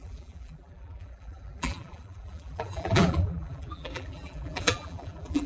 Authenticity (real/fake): fake